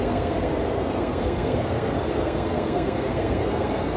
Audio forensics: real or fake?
fake